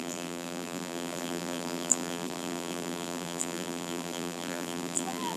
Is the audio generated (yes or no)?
yes